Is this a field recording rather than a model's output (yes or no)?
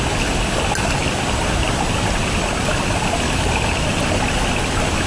yes